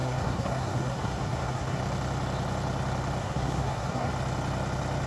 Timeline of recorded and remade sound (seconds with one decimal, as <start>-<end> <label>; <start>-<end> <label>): 0.0-1.8 remade; 1.8-3.2 recorded; 3.2-4.1 remade; 4.1-5.1 recorded